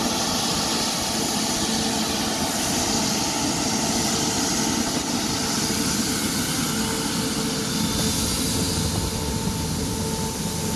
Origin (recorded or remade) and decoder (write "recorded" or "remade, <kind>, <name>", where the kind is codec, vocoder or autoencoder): recorded